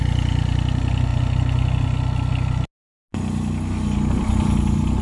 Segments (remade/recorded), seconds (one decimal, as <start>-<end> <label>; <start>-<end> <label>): 0.0-5.0 recorded